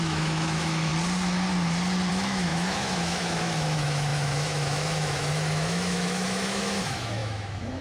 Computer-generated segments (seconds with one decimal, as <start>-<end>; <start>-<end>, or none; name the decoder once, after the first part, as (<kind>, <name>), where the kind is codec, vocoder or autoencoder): 0.0-0.9 (autoencoder, DAC-VAE); 2.1-7.8